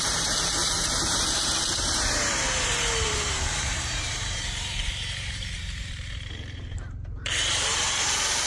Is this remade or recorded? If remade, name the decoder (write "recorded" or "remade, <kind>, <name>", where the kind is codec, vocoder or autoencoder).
remade, vocoder, BigVGAN v2